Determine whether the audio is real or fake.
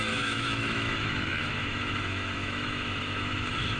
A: fake